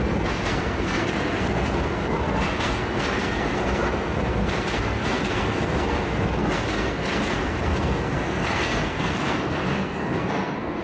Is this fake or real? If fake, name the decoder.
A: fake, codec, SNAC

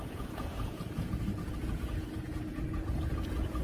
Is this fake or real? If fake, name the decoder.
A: fake, vocoder, Vocos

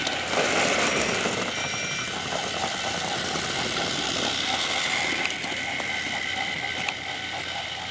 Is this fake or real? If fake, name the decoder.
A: real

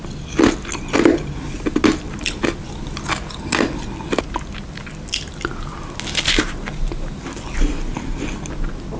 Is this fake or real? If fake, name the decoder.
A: real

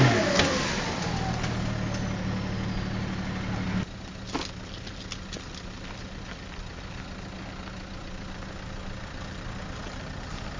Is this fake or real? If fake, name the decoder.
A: real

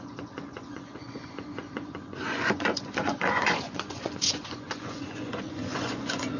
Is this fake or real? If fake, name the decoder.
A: fake, vocoder, Vocos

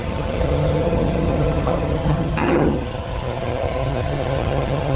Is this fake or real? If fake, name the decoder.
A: fake, vocoder, HiFi-GAN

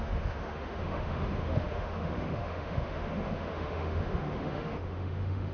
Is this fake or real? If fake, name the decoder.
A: fake, autoencoder, DAC-VAE